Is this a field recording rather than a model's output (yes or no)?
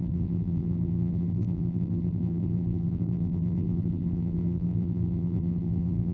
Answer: no